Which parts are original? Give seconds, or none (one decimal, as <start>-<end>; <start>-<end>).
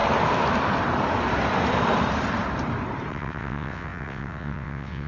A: 0.0-3.1